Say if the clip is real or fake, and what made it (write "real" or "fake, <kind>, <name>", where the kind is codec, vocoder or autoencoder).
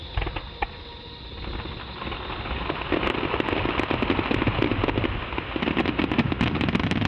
real